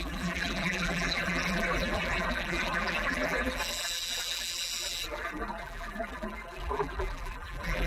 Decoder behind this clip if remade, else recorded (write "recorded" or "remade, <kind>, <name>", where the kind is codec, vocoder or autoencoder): remade, vocoder, BigVGAN v2